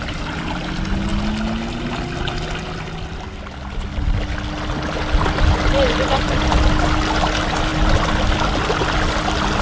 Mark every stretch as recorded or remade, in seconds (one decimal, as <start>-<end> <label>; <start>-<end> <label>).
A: 0.0-9.6 recorded